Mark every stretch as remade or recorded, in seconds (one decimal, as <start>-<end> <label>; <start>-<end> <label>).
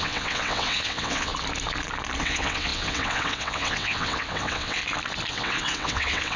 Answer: 0.0-1.3 remade; 1.3-2.2 recorded; 2.2-4.8 remade; 4.8-5.3 recorded; 5.3-6.4 remade